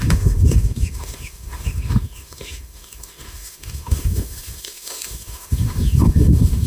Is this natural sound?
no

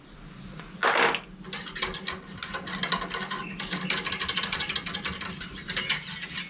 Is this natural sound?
yes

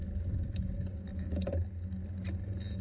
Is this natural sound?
yes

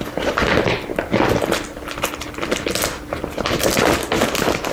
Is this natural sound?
yes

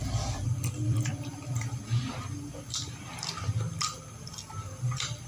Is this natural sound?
no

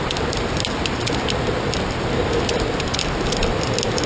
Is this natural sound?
yes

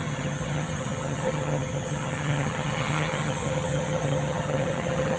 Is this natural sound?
no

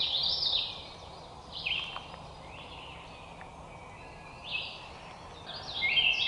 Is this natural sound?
yes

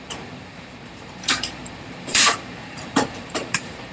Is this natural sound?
no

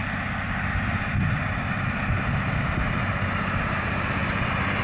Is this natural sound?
yes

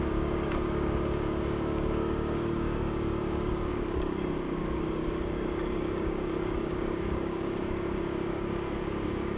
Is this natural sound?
no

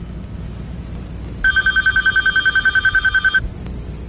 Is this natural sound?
yes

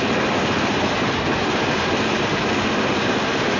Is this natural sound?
yes